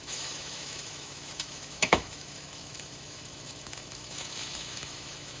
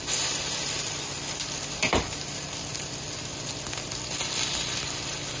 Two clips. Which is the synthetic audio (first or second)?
first